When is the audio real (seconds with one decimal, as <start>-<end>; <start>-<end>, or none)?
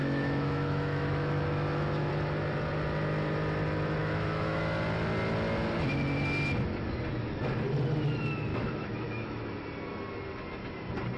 2.1-4.0; 4.6-8.5; 9.4-11.2